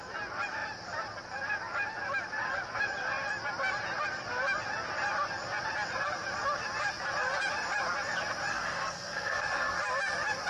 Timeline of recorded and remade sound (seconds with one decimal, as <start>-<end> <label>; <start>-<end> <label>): 0.0-8.5 recorded; 8.5-9.8 remade; 9.8-10.5 recorded